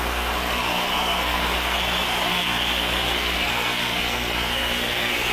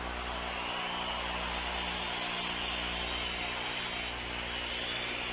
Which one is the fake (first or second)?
first